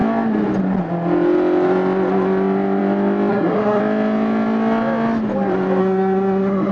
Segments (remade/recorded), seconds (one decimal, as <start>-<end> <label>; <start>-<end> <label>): 0.0-3.3 recorded; 3.3-3.8 remade; 3.8-5.8 recorded; 5.8-6.7 remade